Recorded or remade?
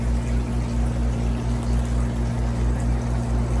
recorded